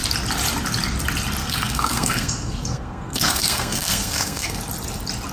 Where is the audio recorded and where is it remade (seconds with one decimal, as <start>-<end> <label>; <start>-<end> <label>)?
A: 0.0-1.4 recorded; 1.4-4.6 remade; 4.6-5.3 recorded

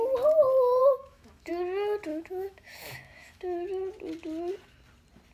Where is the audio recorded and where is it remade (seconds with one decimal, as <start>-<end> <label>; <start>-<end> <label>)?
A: 0.0-0.8 recorded; 0.8-1.5 remade; 1.5-2.1 recorded; 2.1-3.4 remade; 3.4-5.3 recorded

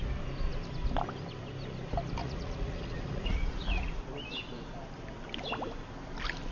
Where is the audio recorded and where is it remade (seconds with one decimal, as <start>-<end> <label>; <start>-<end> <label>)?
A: 0.0-2.2 recorded; 2.2-4.0 remade; 4.0-6.5 recorded

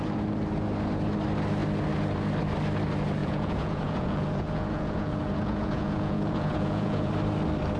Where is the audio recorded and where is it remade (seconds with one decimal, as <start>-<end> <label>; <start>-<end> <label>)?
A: 0.0-3.2 recorded; 3.2-7.1 remade; 7.1-7.8 recorded

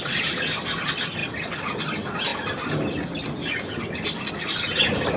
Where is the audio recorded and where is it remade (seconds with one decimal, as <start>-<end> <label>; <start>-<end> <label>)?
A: 0.0-5.2 recorded

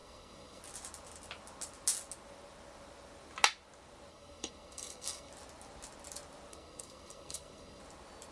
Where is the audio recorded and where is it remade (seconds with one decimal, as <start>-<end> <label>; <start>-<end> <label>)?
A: 0.0-0.6 remade; 0.6-4.1 recorded; 4.1-5.3 remade; 5.3-6.5 recorded; 6.5-7.8 remade; 7.8-8.3 recorded